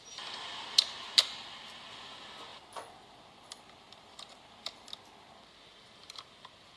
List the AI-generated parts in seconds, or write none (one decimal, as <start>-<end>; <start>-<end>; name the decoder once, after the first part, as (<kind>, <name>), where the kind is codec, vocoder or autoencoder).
none